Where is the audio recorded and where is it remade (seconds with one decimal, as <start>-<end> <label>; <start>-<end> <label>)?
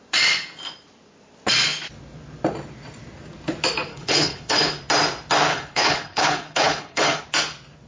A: 0.0-3.9 recorded; 3.9-4.8 remade; 4.8-5.5 recorded; 5.5-7.2 remade; 7.2-7.9 recorded